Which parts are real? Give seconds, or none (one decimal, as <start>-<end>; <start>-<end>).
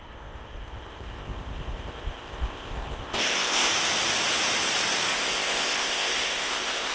3.7-5.1